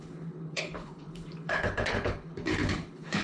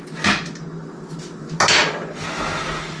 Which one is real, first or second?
second